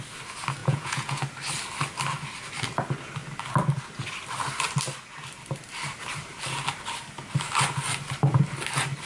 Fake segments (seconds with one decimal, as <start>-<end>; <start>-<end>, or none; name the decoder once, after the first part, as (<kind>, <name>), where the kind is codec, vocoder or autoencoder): 0.6-1.2 (vocoder, Vocos)